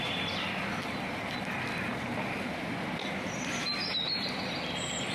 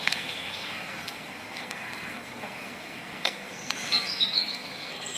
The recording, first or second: first